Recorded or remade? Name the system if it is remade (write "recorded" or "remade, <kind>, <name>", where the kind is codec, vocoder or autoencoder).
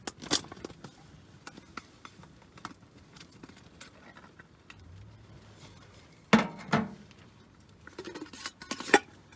recorded